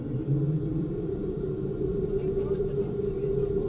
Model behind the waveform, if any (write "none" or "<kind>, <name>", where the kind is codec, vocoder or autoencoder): none